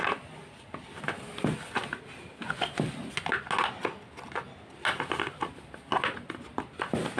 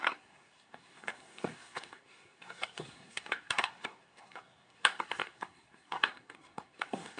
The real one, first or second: first